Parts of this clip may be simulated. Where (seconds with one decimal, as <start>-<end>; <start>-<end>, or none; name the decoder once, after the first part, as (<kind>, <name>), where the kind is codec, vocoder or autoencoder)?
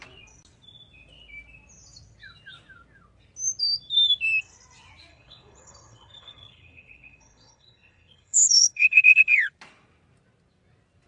5.1-9.5 (codec, HILCodec)